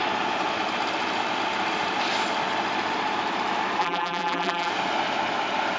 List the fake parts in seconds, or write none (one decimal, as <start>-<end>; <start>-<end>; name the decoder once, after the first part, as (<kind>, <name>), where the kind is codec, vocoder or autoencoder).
3.8-4.7 (vocoder, BigVGAN v2)